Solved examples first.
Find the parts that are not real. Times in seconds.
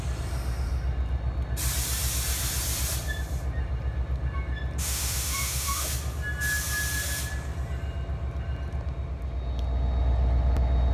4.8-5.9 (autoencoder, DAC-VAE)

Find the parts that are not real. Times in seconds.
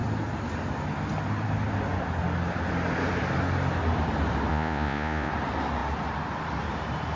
4.5-5.3 (vocoder, Vocos)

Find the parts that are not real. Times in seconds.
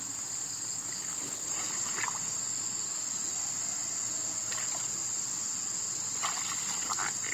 none